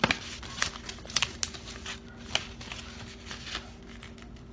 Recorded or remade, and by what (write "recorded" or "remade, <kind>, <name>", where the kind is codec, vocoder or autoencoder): recorded